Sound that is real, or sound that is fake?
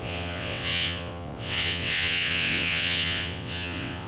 fake